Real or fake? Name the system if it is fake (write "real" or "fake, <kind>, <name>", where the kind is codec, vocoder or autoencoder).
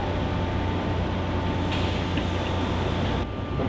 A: real